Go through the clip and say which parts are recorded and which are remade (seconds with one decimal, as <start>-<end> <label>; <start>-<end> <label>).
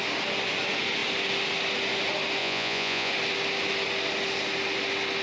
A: 0.0-2.4 recorded; 2.4-3.1 remade; 3.1-5.2 recorded